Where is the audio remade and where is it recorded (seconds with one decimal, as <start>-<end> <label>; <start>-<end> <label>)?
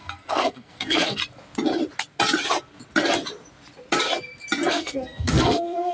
0.0-1.2 remade; 1.2-4.7 recorded; 4.7-5.9 remade